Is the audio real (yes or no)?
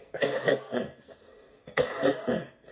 no